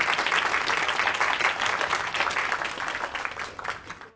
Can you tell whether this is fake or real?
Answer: real